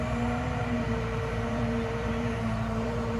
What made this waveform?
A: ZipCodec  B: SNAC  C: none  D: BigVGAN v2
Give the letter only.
D